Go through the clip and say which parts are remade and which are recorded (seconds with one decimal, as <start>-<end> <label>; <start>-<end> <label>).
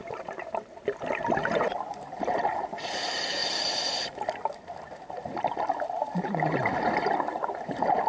0.0-3.4 remade; 3.4-5.0 recorded; 5.0-6.6 remade; 6.6-7.3 recorded; 7.3-8.1 remade